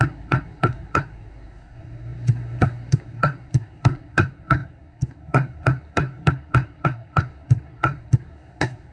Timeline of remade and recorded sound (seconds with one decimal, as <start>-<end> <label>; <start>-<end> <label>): 0.0-8.9 remade